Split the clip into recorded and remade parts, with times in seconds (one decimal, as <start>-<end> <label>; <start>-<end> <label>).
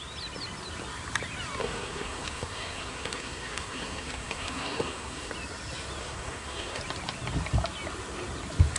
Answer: 0.0-1.6 recorded; 1.6-5.3 remade; 5.3-6.0 recorded; 6.0-6.8 remade; 6.8-8.8 recorded